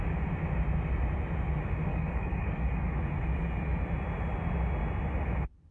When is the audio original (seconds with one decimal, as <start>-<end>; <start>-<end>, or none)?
0.0-1.9; 3.0-5.7